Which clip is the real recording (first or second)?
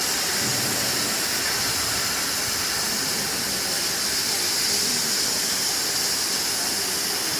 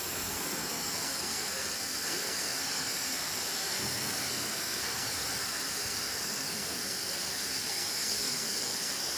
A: first